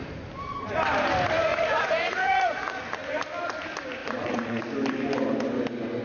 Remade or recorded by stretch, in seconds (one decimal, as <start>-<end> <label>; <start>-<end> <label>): 0.0-1.5 recorded; 1.5-2.8 remade; 2.8-4.0 recorded; 4.0-4.6 remade; 4.6-6.0 recorded